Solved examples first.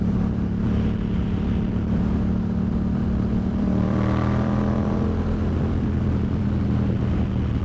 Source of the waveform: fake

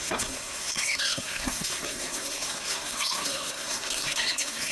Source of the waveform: fake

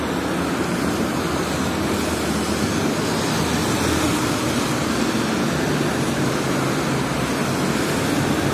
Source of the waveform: real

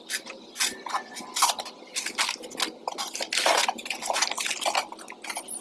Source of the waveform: real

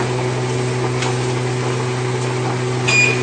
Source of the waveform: real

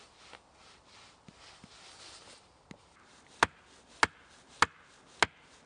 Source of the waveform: real